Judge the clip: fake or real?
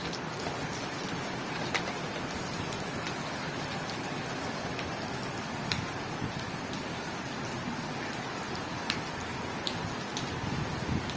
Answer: real